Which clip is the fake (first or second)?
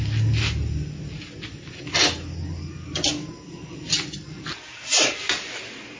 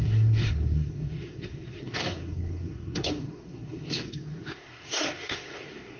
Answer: second